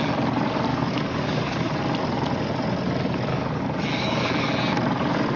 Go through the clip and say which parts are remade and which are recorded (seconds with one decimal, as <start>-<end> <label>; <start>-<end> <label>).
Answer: 0.0-0.7 recorded; 0.7-1.8 remade; 1.8-3.3 recorded; 3.3-4.5 remade; 4.5-5.4 recorded